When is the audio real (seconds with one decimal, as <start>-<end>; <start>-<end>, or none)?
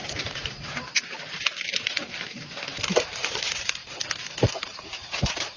3.8-4.7